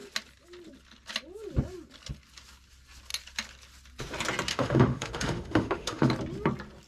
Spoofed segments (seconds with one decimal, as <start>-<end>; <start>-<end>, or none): 4.5-6.1